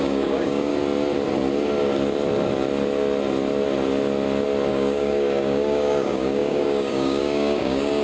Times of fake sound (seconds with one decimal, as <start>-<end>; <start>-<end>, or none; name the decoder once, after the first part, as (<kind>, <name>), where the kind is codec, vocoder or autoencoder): 0.0-0.7 (codec, DAC); 4.7-8.0